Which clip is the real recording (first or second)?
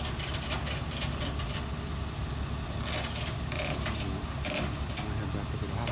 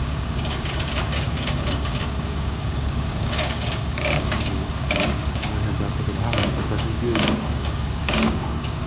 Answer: first